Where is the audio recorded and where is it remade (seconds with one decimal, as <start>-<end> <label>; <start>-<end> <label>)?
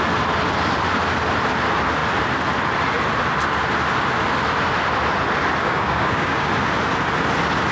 0.0-5.6 recorded; 5.6-6.5 remade; 6.5-7.7 recorded